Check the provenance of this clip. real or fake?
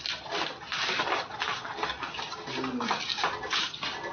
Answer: real